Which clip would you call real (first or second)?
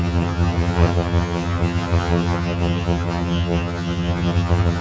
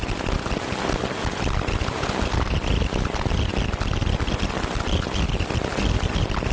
second